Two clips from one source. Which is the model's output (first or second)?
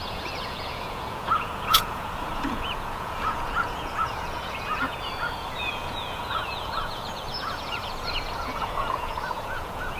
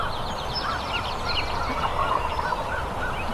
first